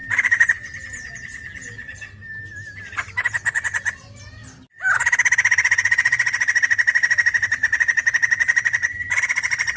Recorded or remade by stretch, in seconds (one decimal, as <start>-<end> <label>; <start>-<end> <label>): 0.0-0.5 remade; 0.5-9.8 recorded